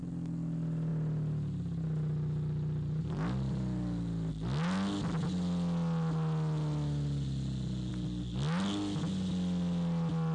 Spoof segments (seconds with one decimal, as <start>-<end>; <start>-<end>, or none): none